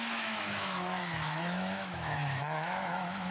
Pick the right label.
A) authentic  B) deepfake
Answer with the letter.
B